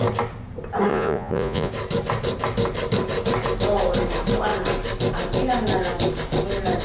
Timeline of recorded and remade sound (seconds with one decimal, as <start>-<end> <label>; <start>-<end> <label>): 0.0-0.9 recorded; 0.9-1.7 remade; 1.7-6.8 recorded

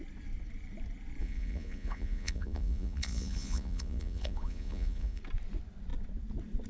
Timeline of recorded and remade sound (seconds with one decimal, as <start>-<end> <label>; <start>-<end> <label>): 0.0-1.2 recorded; 1.2-5.2 remade; 5.2-6.7 recorded

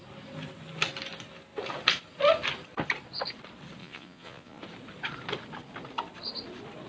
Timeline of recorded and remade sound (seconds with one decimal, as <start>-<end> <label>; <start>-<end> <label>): 0.0-3.8 recorded; 3.8-4.6 remade; 4.6-6.9 recorded

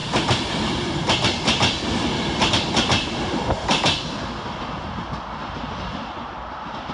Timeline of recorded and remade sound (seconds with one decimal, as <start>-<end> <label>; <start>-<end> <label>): 0.0-6.9 recorded

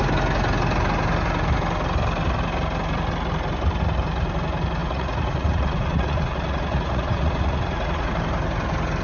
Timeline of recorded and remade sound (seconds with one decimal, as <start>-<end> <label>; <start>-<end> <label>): 0.0-4.8 recorded; 4.8-8.1 remade; 8.1-9.0 recorded

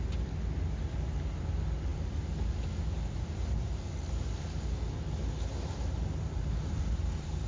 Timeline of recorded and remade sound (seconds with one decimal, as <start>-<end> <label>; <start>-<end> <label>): 0.0-7.5 recorded

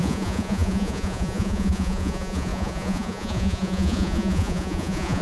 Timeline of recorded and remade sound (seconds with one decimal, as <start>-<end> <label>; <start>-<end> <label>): 0.0-5.2 remade